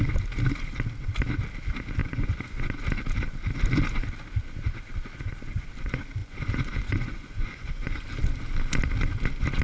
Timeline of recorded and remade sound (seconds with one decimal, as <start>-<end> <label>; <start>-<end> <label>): 0.0-2.0 recorded; 2.0-2.8 remade; 2.8-6.2 recorded; 6.2-7.9 remade; 7.9-9.6 recorded